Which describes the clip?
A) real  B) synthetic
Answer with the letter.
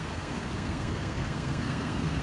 B